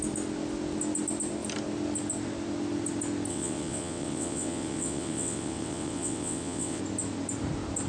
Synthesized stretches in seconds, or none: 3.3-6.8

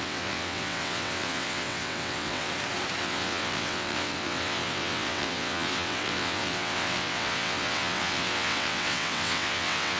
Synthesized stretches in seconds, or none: 0.0-2.5; 3.0-10.0

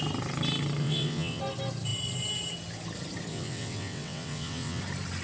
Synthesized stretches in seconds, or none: 0.8-1.4; 3.3-4.8

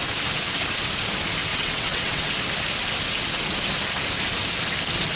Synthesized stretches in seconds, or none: 1.5-2.3

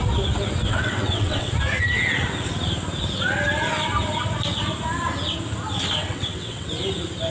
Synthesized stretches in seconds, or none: 0.7-1.5; 6.0-6.7

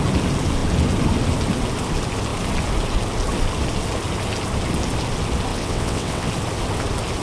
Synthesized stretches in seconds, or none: 5.5-6.3

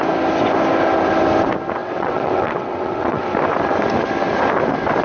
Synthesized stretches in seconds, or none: 1.8-3.2

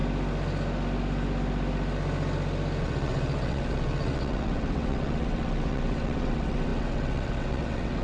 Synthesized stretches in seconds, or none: 2.8-8.0